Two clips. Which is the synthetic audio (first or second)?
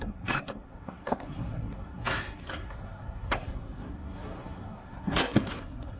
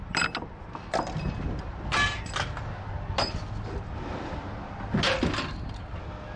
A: first